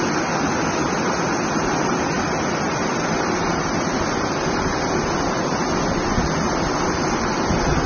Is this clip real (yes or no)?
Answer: yes